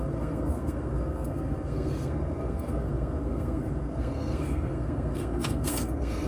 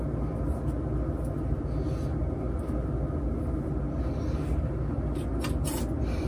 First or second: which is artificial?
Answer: first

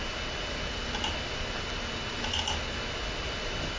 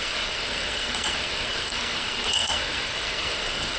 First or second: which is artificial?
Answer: second